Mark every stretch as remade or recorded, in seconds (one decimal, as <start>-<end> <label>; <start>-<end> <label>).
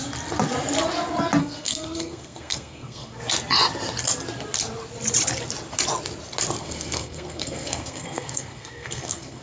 0.0-1.4 recorded; 1.4-3.2 remade; 3.2-6.6 recorded; 6.6-9.4 remade